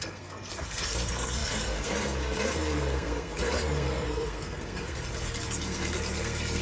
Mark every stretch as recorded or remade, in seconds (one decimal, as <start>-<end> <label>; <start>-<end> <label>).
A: 0.0-6.6 remade